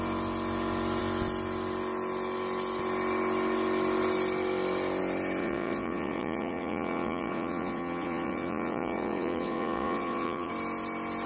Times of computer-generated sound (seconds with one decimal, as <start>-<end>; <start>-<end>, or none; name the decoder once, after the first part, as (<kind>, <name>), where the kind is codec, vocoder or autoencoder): 5.4-10.5 (vocoder, Vocos)

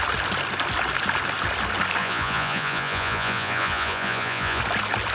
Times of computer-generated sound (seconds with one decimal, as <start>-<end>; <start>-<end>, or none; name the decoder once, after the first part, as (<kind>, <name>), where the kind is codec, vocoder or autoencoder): 2.0-4.6 (vocoder, Vocos)

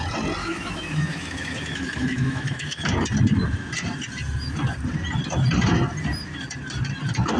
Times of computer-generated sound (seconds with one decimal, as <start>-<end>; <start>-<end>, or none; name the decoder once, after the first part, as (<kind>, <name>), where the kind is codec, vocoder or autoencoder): 0.4-2.9 (autoencoder, DAC-VAE)